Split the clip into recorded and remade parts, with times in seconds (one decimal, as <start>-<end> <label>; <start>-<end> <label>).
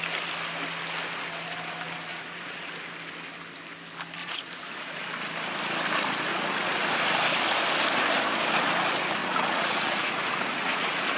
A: 0.0-2.1 recorded; 2.1-2.7 remade; 2.7-4.2 recorded; 4.2-5.0 remade; 5.0-6.3 recorded; 6.3-7.1 remade; 7.1-9.2 recorded; 9.2-11.2 remade